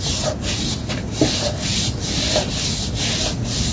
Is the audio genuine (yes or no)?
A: yes